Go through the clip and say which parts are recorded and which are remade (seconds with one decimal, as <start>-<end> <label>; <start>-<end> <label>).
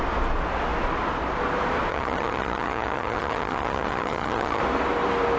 0.0-1.9 recorded; 1.9-4.6 remade; 4.6-5.4 recorded